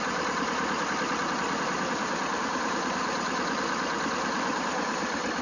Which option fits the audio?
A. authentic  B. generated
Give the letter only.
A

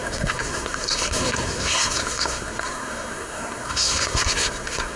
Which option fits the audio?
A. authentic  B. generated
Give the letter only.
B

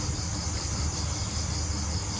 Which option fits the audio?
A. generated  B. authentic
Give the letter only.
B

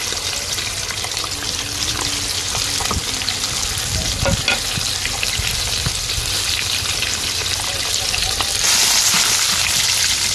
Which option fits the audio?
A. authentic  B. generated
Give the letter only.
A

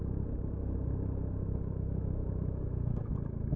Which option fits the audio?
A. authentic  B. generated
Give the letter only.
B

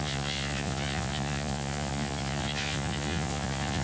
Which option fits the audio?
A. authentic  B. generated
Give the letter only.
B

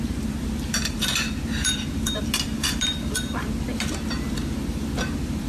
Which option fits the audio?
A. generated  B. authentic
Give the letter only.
A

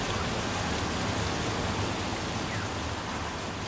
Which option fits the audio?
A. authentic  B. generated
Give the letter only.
A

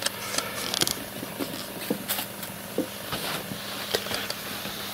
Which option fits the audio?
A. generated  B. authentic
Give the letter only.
B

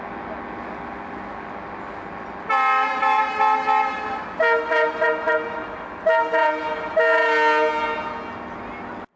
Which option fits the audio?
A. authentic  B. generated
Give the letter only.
A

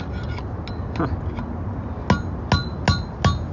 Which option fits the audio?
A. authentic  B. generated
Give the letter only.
A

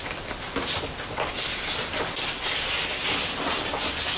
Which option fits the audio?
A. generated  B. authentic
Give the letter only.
B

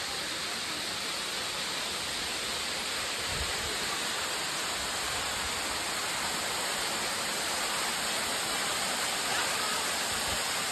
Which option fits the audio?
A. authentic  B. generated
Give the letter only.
A